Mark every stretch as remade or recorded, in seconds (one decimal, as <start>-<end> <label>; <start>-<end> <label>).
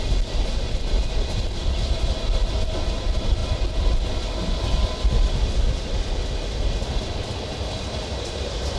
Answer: 0.0-8.8 remade